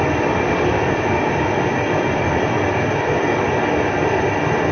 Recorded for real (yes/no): yes